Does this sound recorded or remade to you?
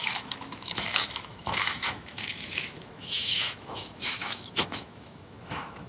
remade